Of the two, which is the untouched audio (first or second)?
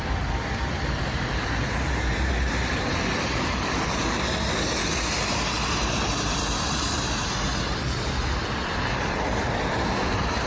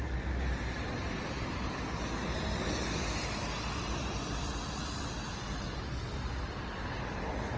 second